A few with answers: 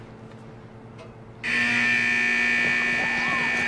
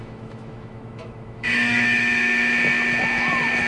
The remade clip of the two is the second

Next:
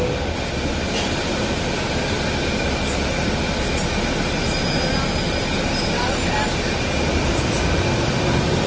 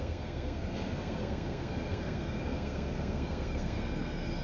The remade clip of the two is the second